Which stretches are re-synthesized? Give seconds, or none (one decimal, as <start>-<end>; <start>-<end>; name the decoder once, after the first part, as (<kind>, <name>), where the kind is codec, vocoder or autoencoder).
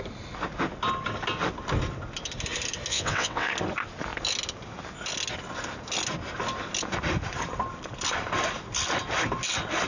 2.9-3.5 (vocoder, WaveNeXt)